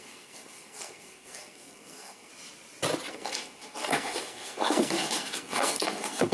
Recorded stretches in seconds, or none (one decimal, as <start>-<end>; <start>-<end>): 2.3-3.1